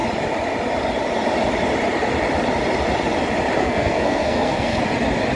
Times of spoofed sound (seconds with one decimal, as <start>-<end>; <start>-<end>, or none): 3.6-4.8